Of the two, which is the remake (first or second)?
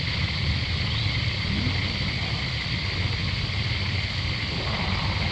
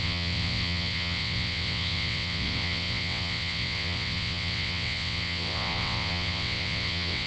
second